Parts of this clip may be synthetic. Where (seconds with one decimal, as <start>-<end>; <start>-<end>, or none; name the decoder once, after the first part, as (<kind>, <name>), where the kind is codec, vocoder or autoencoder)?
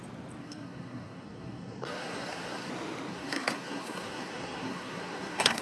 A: 0.4-2.7 (codec, SNAC); 3.1-5.6